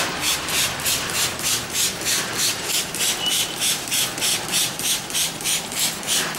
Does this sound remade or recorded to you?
remade